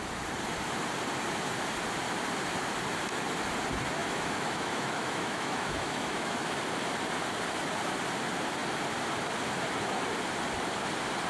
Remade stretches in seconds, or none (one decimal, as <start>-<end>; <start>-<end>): 4.0-6.6